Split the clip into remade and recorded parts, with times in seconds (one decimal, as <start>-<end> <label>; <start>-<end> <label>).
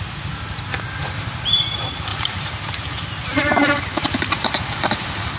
0.0-1.0 recorded; 1.0-1.6 remade; 1.6-2.1 recorded; 2.1-5.4 remade